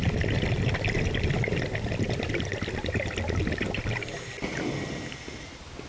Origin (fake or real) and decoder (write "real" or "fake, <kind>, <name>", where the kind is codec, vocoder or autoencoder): real